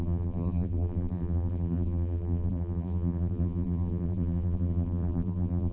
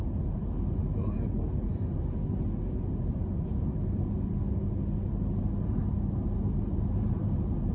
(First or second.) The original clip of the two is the second